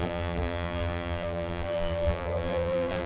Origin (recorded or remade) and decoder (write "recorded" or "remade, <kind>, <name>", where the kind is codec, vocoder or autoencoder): remade, vocoder, BigVGAN v2